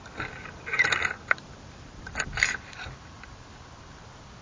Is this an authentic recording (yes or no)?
yes